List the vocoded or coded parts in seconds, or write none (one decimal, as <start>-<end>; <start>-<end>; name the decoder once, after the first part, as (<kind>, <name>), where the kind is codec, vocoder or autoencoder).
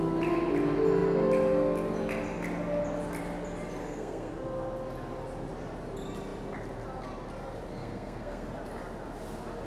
3.8-4.3 (codec, SNAC); 7.8-8.5